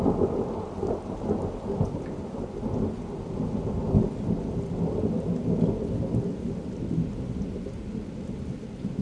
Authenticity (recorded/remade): recorded